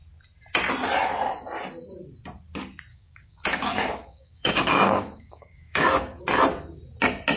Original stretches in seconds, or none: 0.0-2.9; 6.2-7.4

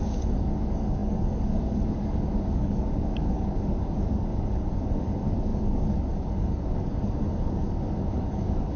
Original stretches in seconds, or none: none

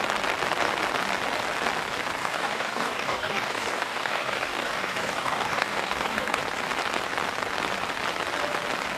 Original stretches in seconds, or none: 0.0-2.2; 6.4-9.0

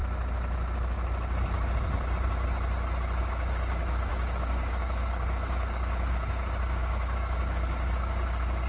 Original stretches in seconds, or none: 0.0-3.2

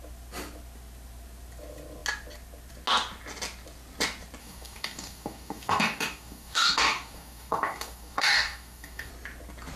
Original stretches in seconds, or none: 0.0-4.4; 9.1-9.8

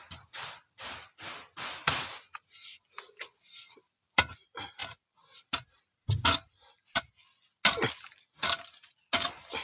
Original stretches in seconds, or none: 0.0-9.6